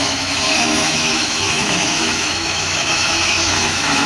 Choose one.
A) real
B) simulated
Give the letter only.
B